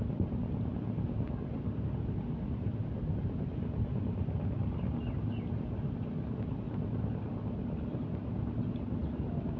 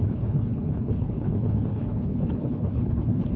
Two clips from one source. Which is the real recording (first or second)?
first